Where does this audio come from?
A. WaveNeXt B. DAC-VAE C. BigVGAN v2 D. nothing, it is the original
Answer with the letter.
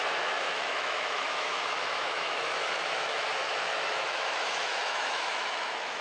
B